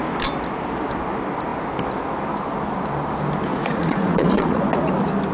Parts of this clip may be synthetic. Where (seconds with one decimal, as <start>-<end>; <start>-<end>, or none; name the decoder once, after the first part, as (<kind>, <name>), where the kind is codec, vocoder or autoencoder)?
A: 3.5-4.6 (vocoder, Vocos)